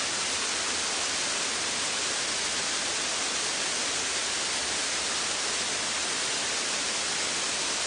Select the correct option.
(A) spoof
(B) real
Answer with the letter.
A